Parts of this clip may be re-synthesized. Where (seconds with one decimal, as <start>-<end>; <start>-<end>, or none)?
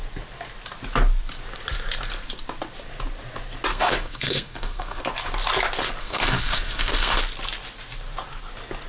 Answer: 3.7-5.0; 6.0-7.2